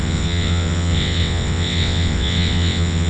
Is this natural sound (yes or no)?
no